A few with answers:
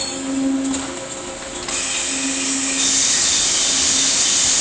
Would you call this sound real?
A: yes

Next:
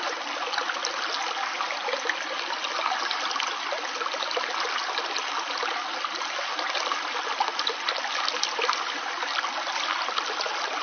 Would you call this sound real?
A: yes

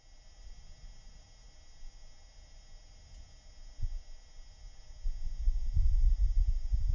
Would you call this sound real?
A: yes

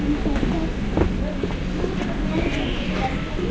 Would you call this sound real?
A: yes